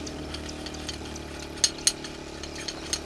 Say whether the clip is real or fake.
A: real